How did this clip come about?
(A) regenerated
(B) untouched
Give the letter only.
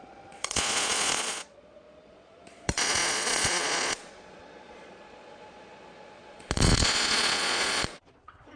A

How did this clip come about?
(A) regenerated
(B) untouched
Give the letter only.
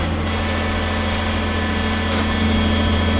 B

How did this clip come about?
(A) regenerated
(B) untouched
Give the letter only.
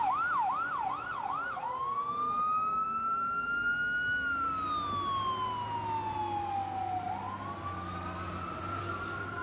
B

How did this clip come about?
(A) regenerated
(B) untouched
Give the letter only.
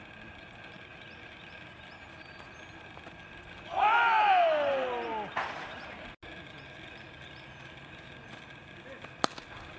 B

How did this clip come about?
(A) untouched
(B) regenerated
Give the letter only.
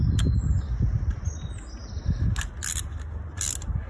A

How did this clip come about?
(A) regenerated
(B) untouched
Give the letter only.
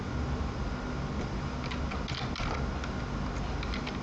B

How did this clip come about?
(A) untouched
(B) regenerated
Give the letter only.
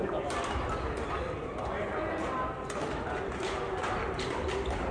A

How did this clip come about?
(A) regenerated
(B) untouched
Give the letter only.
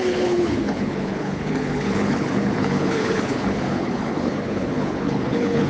A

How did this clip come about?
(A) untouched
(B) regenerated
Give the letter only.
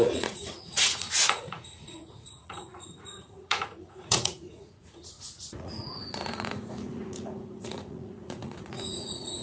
B